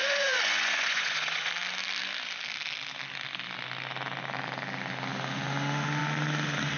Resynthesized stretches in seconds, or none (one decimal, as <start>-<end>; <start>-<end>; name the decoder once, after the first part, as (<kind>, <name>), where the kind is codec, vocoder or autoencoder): 0.0-1.5 (vocoder, Vocos)